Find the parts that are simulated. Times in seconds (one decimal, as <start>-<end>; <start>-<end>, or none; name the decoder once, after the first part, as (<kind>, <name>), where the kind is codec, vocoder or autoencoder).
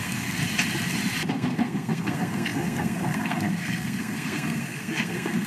0.0-0.4 (codec, SNAC); 1.3-5.5